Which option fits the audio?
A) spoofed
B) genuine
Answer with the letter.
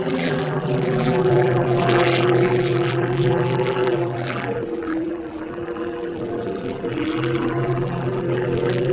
A